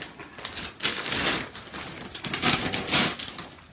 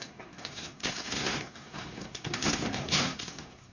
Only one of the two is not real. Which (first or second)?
second